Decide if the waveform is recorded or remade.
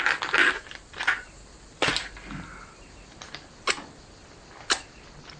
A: recorded